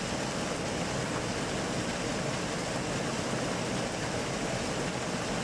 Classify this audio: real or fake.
real